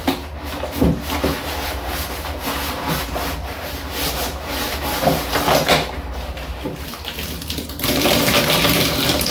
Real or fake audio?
fake